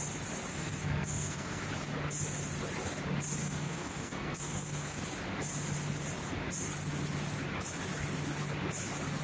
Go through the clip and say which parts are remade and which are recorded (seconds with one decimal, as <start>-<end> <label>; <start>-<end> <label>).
0.0-0.5 recorded; 0.5-1.6 remade; 1.6-3.4 recorded; 3.4-5.0 remade; 5.0-9.2 recorded